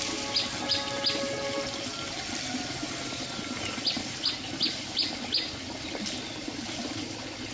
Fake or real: real